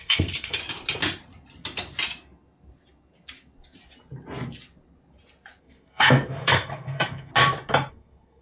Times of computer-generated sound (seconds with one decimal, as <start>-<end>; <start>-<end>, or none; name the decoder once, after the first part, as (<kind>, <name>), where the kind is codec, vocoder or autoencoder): 0.0-0.6 (codec, SNAC); 5.6-7.3; 7.9-8.4